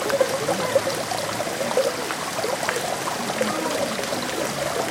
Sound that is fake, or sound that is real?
real